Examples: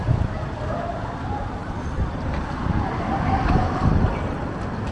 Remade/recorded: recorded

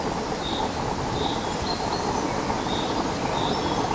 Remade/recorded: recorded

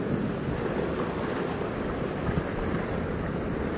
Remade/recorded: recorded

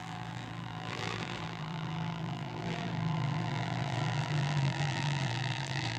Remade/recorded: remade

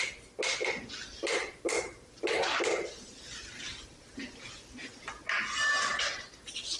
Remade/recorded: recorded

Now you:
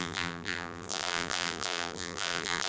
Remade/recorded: remade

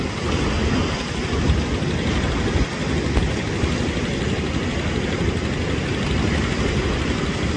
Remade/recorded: recorded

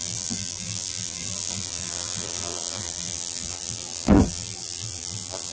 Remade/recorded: remade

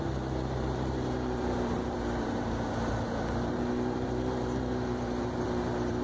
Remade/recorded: remade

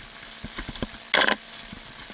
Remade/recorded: recorded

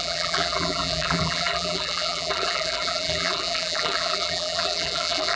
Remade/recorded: remade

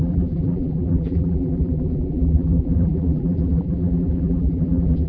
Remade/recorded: remade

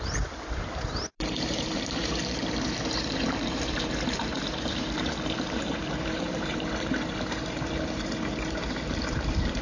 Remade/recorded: remade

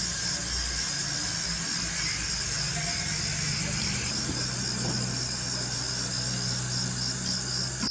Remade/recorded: recorded